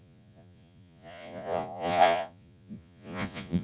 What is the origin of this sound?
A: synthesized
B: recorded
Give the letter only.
A